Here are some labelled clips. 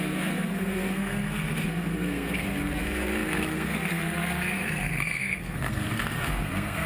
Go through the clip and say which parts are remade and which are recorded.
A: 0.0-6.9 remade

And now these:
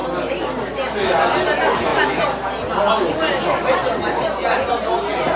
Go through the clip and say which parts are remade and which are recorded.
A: 0.0-5.4 recorded

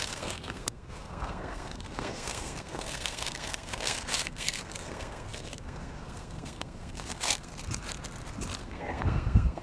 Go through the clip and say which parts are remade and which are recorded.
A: 0.0-7.5 remade; 7.5-8.6 recorded; 8.6-9.6 remade